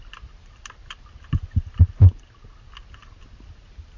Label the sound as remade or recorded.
recorded